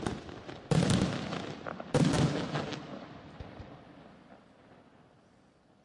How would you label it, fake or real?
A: real